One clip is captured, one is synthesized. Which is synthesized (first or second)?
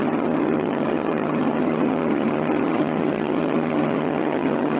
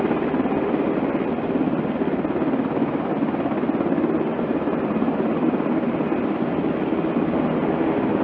first